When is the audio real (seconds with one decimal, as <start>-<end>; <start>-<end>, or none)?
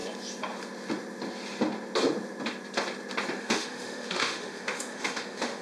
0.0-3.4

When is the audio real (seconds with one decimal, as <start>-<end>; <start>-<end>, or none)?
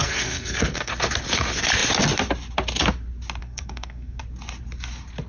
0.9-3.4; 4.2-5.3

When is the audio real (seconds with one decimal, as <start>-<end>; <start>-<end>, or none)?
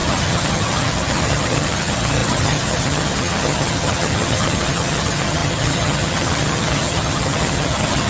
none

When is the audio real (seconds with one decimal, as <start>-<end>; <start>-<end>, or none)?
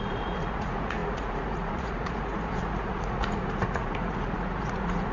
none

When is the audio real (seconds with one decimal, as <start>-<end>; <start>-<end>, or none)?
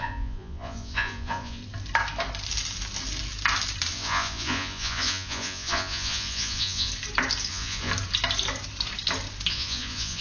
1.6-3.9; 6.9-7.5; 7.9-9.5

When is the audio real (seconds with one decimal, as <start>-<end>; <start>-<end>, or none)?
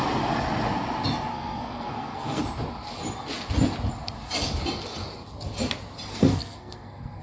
0.0-1.3; 2.4-6.1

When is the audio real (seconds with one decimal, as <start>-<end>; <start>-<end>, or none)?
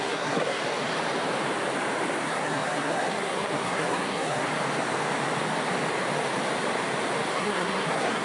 0.6-2.2; 4.4-7.3